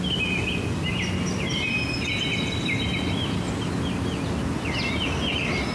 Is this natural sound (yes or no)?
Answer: yes